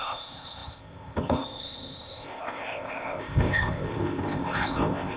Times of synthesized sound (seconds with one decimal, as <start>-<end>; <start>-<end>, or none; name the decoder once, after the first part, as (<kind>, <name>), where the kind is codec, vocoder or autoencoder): 0.0-5.2 (codec, ZipCodec)